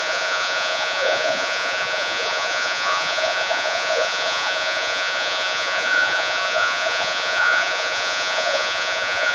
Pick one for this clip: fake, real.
fake